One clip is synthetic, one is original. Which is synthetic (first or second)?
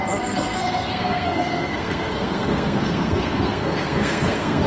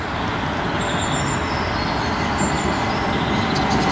first